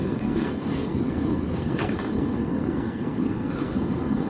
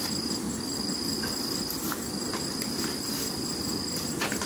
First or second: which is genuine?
second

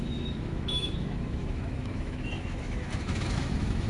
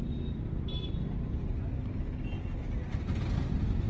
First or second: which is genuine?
second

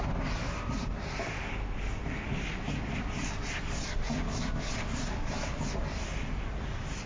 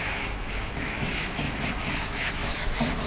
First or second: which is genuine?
first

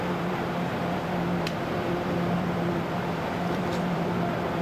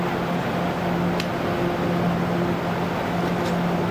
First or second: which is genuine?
second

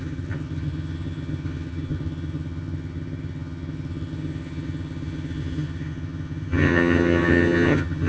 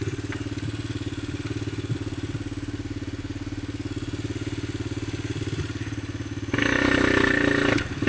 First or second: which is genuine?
second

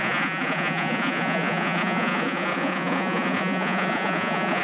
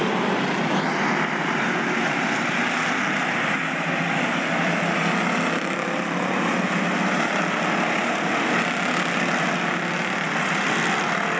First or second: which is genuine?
second